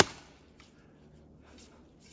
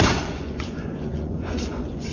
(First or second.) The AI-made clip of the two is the second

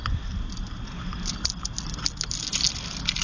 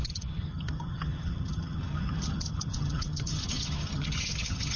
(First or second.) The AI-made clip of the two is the second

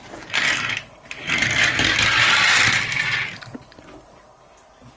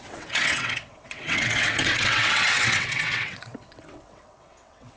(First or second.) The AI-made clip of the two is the second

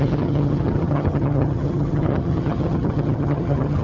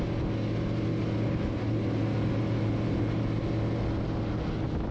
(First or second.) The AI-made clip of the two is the first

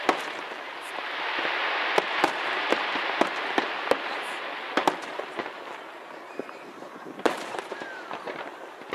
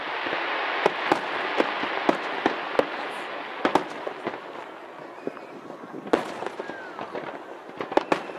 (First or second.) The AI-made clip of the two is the first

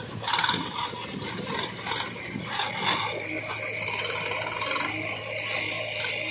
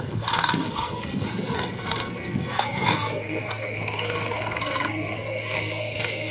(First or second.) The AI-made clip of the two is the second